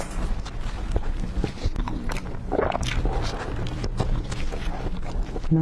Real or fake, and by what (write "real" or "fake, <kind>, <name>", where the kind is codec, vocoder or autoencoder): real